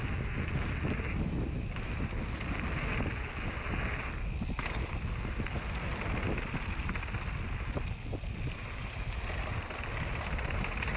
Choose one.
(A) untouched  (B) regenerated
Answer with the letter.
A